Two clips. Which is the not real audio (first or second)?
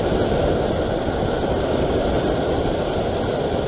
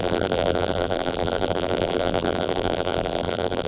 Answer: second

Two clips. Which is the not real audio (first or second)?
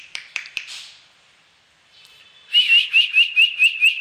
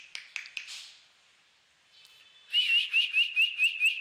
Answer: first